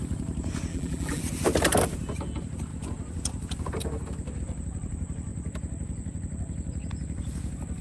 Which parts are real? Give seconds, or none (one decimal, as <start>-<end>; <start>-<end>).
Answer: 0.0-0.7; 1.2-7.8